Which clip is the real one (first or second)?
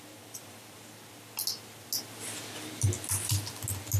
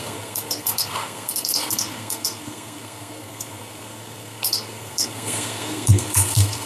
first